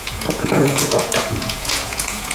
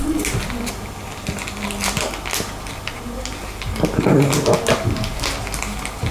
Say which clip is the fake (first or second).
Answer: first